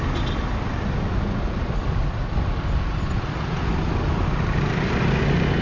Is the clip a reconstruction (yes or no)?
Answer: no